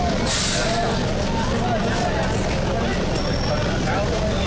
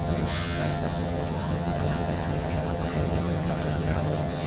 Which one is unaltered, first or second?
first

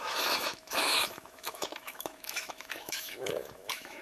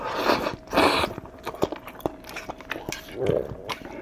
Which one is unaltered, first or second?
second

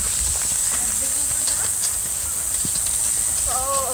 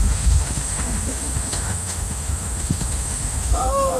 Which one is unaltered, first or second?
first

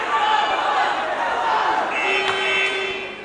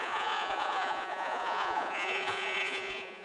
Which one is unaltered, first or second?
first